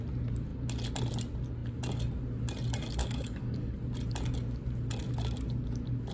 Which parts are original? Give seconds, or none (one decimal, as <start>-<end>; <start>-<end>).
0.0-3.0; 3.7-6.1